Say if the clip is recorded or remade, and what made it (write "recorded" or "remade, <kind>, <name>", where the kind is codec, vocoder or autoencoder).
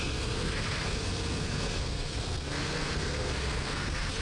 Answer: remade, codec, SNAC